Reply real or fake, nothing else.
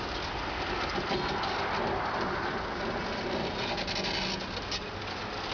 real